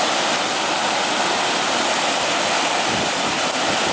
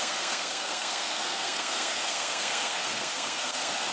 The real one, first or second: first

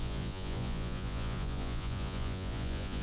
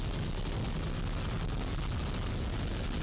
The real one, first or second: second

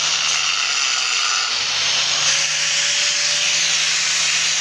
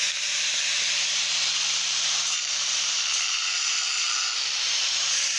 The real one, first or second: first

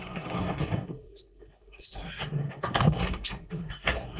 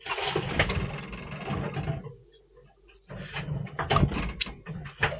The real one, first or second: second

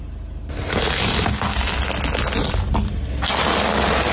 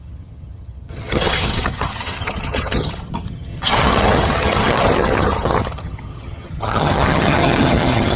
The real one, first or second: first